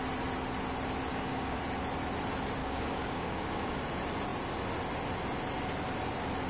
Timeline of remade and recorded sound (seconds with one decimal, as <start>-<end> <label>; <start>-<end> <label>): 0.0-1.1 recorded; 1.1-1.6 remade; 1.6-2.6 recorded; 2.6-3.7 remade; 3.7-6.5 recorded